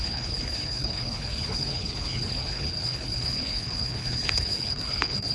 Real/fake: fake